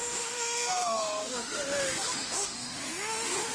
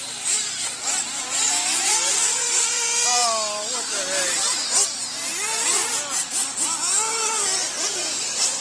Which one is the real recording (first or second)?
second